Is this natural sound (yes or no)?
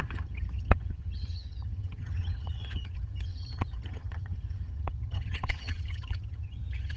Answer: no